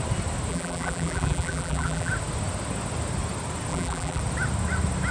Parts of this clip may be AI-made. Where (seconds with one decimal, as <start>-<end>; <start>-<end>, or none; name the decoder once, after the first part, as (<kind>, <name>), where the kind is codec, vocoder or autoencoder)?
0.5-2.1 (vocoder, BigVGAN v2); 3.7-4.2